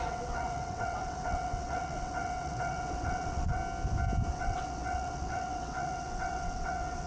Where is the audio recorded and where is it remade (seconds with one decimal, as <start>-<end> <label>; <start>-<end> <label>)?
0.0-3.6 remade; 3.6-4.3 recorded; 4.3-7.1 remade

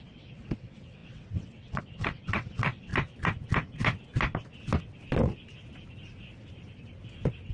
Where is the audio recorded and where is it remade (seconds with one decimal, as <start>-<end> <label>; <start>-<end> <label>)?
0.0-2.9 remade; 2.9-7.5 recorded

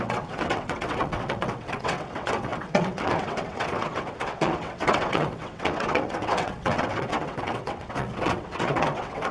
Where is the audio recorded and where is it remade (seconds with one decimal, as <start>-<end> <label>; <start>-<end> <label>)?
0.0-9.3 remade

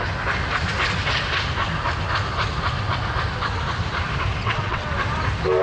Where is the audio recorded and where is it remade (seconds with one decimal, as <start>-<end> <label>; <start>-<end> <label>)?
0.0-4.4 recorded; 4.4-4.9 remade; 4.9-5.6 recorded

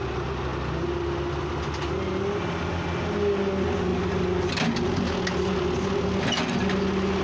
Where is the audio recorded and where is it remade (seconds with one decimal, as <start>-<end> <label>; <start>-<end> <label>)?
0.0-7.2 recorded

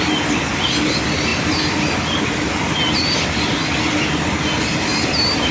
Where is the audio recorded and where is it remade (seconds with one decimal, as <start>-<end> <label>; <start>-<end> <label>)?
0.0-5.5 recorded

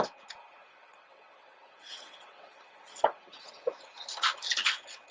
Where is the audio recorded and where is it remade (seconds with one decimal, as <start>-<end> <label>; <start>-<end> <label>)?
0.0-0.6 recorded; 0.6-3.7 remade; 3.7-5.1 recorded